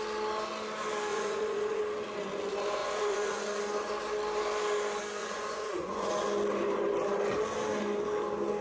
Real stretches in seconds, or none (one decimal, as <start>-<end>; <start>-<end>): 0.0-1.1; 1.8-2.8; 3.6-5.2; 6.1-8.6